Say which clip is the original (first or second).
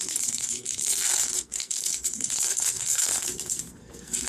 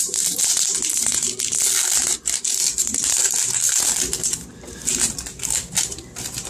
second